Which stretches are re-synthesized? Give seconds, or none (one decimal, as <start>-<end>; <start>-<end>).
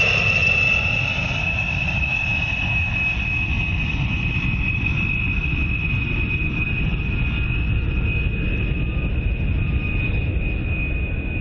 none